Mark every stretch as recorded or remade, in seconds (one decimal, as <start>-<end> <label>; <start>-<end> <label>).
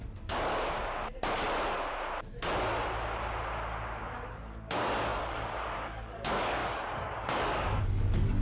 0.0-0.5 remade; 0.5-4.3 recorded; 4.3-8.4 remade